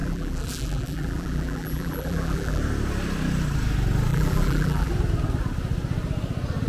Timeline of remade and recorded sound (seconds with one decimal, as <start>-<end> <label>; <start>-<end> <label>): 0.0-2.6 remade; 2.6-4.1 recorded; 4.1-4.9 remade; 4.9-6.7 recorded